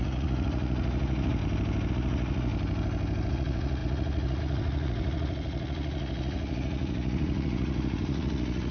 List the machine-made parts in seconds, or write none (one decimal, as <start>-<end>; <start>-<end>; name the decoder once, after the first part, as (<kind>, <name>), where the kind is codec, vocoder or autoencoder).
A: 0.0-1.4 (vocoder, Vocos); 1.9-2.5; 3.3-8.7